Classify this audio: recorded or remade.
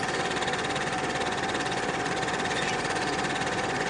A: remade